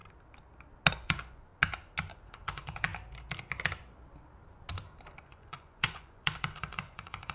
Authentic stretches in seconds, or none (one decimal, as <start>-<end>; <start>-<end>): 0.0-0.9; 1.5-2.1; 2.9-5.2